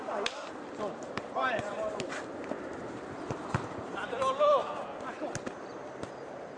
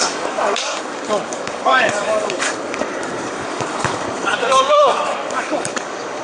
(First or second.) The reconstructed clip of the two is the second